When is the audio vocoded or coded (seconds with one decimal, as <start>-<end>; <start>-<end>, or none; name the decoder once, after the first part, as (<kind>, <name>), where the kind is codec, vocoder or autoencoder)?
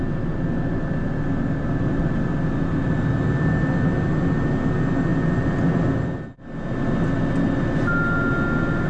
none